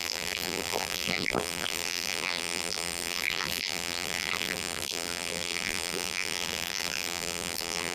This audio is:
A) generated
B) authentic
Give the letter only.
A